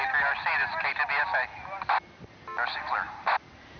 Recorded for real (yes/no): yes